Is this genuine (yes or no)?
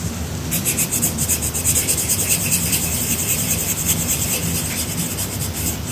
no